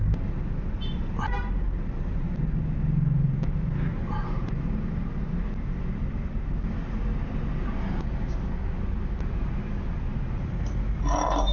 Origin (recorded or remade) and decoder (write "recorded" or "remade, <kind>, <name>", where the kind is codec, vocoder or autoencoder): recorded